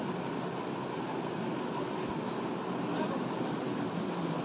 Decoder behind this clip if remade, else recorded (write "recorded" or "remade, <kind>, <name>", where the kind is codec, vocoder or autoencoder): recorded